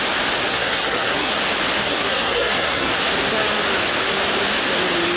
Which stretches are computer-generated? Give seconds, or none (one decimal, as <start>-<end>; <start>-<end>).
0.5-1.4; 1.8-3.1

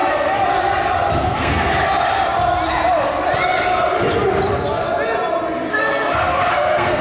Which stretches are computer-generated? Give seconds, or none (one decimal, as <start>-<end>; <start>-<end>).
1.1-1.8; 5.7-7.0

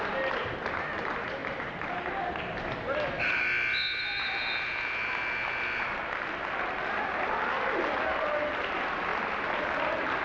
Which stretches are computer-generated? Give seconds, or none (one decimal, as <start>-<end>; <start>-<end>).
none

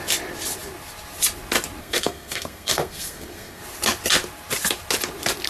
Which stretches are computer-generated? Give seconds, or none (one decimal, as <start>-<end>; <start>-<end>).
1.8-3.6

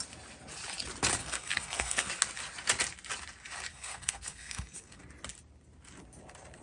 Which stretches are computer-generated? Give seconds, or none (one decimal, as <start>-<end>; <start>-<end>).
1.2-2.1; 3.7-5.0

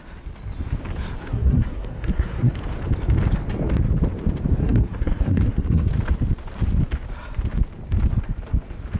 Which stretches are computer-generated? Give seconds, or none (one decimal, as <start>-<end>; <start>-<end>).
1.2-2.5; 4.6-5.9

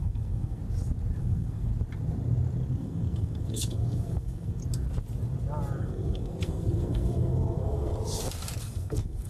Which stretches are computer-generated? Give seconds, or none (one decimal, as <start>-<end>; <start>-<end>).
0.0-0.6; 1.2-1.7; 2.8-4.6; 5.8-7.9; 8.6-9.3

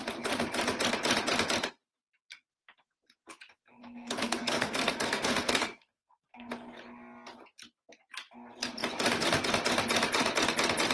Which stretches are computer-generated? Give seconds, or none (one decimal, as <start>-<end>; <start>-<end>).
3.7-6.5